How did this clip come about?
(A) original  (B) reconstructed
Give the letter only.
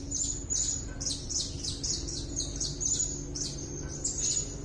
A